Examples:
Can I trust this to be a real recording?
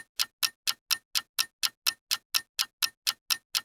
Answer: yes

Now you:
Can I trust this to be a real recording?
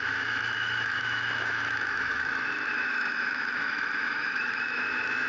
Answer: no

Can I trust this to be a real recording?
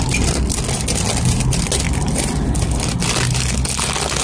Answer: yes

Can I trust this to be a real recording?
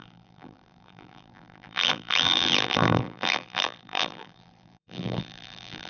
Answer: no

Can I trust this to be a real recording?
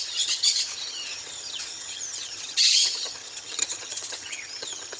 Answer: no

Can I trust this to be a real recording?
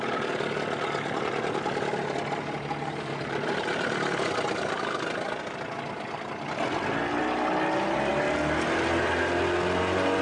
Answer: yes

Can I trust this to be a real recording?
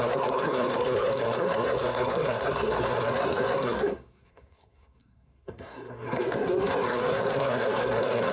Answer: no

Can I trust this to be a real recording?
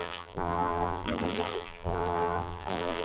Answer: no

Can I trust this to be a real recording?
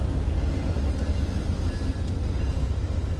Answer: yes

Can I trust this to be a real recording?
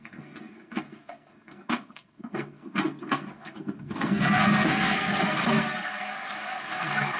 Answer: no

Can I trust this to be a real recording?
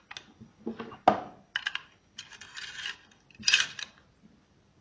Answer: yes